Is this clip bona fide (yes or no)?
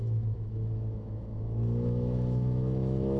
no